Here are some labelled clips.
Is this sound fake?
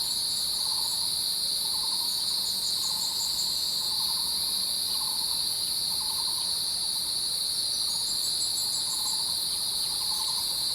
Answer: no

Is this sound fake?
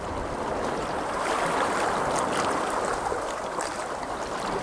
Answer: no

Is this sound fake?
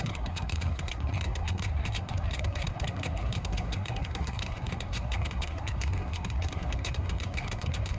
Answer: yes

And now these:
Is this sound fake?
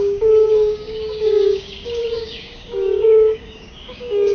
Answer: yes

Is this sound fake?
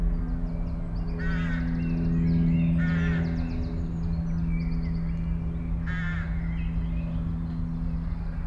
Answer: no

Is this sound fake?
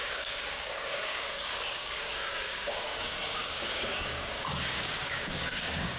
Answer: yes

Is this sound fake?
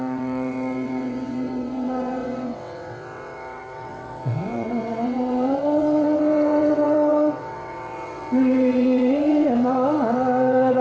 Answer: yes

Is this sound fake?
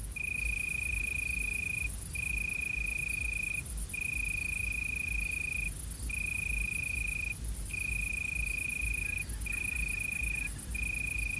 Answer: no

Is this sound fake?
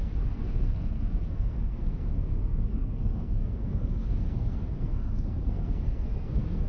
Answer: yes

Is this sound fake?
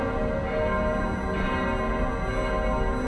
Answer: no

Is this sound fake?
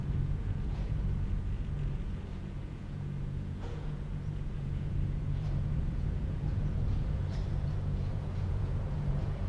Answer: yes